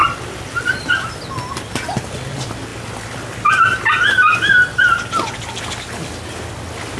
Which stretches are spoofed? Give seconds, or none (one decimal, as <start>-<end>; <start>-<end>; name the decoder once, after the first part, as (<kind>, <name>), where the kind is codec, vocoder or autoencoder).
0.0-1.0 (vocoder, BigVGAN v2); 2.7-3.9